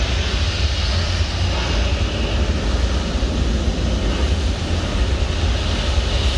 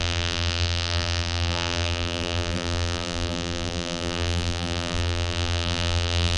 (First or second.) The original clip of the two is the first